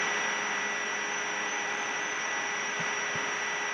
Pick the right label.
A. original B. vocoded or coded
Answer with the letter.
A